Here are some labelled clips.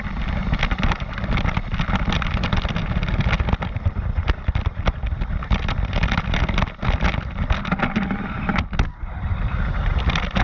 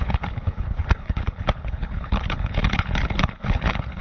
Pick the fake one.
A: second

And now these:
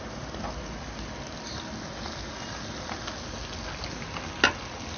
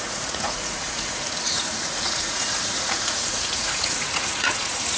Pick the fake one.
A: second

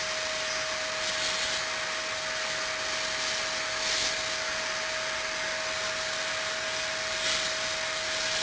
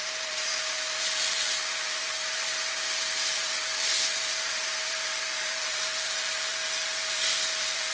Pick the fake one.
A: second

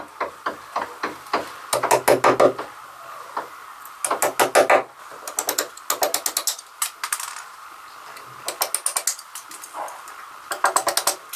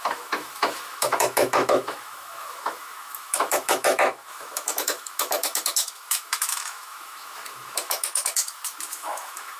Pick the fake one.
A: second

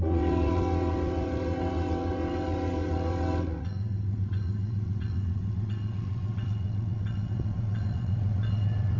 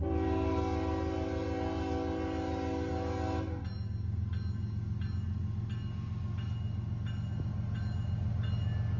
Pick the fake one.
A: first